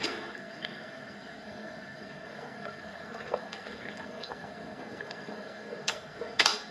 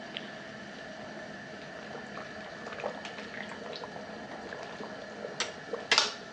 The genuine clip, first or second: second